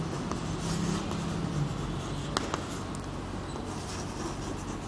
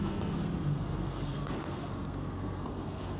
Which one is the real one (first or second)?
first